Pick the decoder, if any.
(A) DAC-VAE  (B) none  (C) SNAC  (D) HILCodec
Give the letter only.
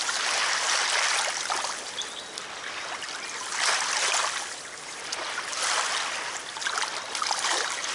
B